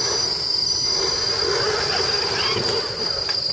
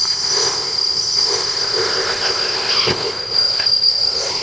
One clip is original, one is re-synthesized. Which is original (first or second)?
first